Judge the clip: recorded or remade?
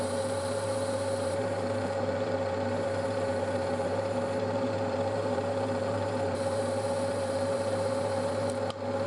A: remade